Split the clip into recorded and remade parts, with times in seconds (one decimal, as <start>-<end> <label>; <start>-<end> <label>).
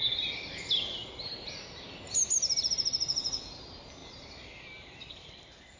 0.0-5.8 recorded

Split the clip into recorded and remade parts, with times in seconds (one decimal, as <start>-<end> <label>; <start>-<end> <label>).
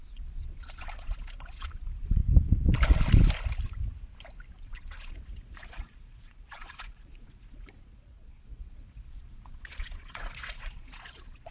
0.0-2.2 remade; 2.2-4.6 recorded; 4.6-11.5 remade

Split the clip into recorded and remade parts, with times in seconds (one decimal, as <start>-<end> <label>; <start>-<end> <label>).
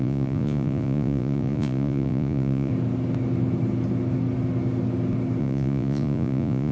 0.0-2.7 remade; 2.7-5.4 recorded; 5.4-6.7 remade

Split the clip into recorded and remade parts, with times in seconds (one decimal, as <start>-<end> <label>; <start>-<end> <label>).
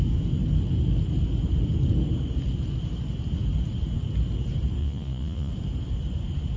0.0-4.8 recorded; 4.8-5.5 remade; 5.5-6.6 recorded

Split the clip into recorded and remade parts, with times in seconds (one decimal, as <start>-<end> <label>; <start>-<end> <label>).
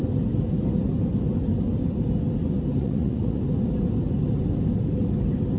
0.0-2.8 recorded; 2.8-3.4 remade; 3.4-5.6 recorded